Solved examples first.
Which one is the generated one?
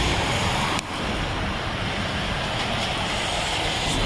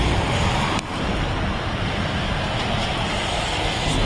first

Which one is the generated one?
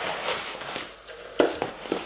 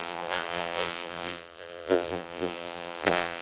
second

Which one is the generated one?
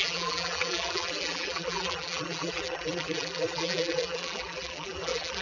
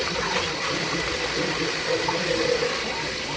first